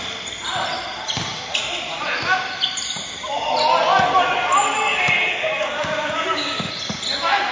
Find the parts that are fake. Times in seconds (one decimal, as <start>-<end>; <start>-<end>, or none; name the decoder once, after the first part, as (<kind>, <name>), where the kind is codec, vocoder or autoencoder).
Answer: 4.9-6.7 (codec, DAC)